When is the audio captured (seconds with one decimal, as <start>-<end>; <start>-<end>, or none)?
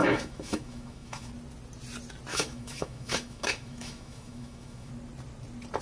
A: 1.3-2.3; 4.9-5.8